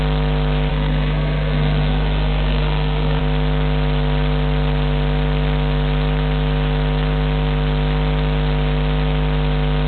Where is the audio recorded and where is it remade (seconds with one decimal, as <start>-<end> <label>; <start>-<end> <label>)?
0.0-0.7 recorded; 0.7-3.2 remade; 3.2-9.9 recorded